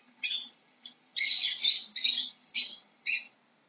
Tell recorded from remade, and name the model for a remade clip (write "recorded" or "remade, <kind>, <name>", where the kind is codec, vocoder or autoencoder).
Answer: remade, vocoder, BigVGAN v2